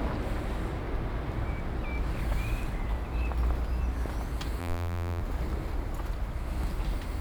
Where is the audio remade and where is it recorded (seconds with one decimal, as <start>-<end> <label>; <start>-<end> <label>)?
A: 0.0-4.6 recorded; 4.6-5.2 remade; 5.2-7.2 recorded